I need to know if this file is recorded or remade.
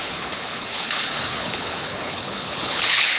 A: remade